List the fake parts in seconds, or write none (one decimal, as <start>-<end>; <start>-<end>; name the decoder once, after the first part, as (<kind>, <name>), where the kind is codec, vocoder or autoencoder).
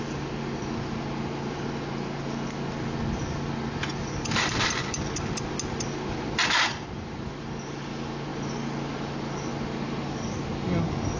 none